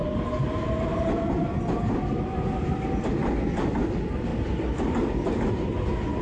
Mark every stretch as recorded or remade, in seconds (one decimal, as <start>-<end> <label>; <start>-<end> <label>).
0.0-6.2 recorded